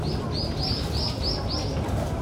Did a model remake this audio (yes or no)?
no